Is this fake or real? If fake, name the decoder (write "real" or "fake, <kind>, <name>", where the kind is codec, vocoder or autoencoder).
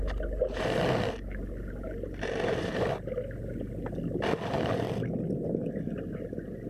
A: real